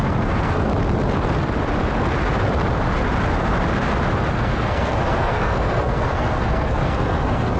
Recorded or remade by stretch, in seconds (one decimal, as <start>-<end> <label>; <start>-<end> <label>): 0.0-0.7 remade; 0.7-4.3 recorded; 4.3-7.6 remade